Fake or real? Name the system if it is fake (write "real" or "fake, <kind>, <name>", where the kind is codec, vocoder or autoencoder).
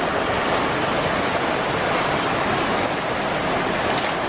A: real